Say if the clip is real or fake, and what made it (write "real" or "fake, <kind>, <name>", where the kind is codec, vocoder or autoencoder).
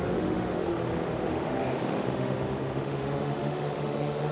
fake, autoencoder, DAC-VAE